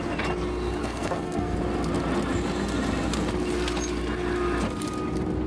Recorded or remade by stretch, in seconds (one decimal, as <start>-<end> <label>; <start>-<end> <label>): 0.0-0.8 recorded; 0.8-1.6 remade; 1.6-5.5 recorded